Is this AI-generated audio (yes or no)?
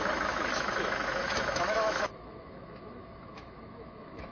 yes